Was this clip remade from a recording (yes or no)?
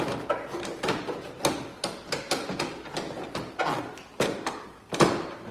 no